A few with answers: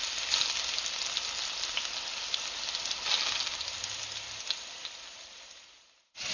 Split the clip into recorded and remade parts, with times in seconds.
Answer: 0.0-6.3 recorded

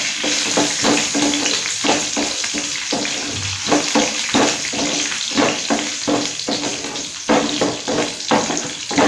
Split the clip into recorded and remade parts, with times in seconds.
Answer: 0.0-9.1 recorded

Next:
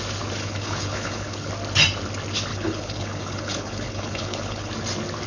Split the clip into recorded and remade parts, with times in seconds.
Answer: 0.0-0.4 recorded; 0.4-1.5 remade; 1.5-2.5 recorded; 2.5-4.7 remade; 4.7-5.3 recorded

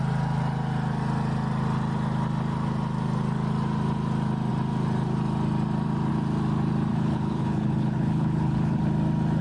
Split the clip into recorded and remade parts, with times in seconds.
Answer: 0.0-6.9 recorded; 6.9-8.8 remade; 8.8-9.4 recorded